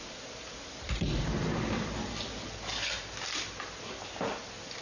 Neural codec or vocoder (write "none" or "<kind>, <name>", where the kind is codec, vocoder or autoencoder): none